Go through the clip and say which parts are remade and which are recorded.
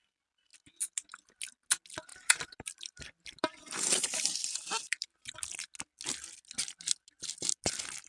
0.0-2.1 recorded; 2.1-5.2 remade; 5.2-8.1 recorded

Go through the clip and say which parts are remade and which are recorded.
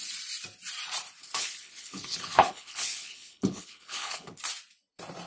0.0-1.2 recorded; 1.2-4.4 remade; 4.4-5.3 recorded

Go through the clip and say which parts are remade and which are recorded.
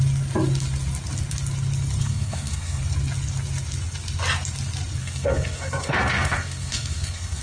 0.0-2.0 recorded; 2.0-2.8 remade; 2.8-5.0 recorded; 5.0-7.4 remade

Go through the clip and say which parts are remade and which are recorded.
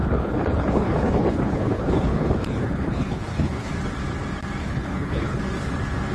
0.0-3.7 remade; 3.7-4.6 recorded; 4.6-5.4 remade; 5.4-6.1 recorded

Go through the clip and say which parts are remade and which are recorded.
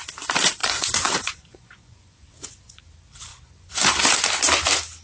0.0-0.6 recorded; 0.6-2.8 remade; 2.8-3.3 recorded; 3.3-3.9 remade; 3.9-5.0 recorded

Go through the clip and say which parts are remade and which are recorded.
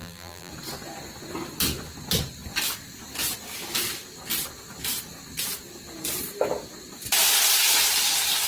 0.0-0.5 remade; 0.5-8.5 recorded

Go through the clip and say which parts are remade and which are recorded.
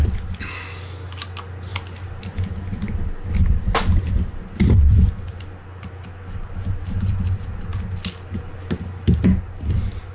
0.0-10.1 recorded